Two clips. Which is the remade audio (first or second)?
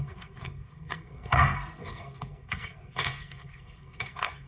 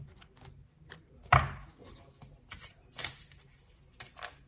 first